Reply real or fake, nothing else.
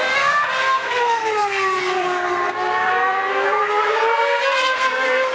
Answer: fake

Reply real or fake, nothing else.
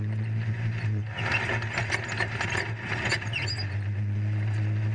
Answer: real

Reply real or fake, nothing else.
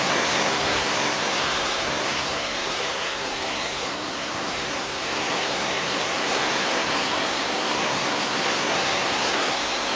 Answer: fake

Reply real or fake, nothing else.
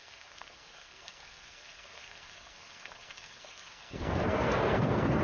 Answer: fake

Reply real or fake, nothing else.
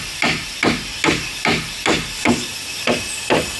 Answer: real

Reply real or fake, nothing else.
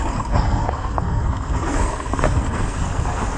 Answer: fake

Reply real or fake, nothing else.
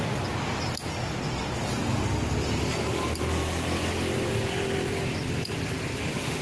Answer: real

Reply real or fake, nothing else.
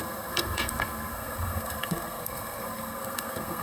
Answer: fake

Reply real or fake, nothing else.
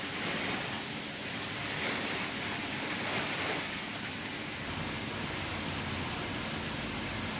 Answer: real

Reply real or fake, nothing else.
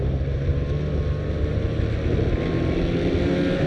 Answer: real